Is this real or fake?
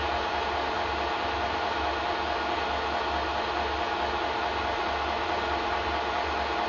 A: real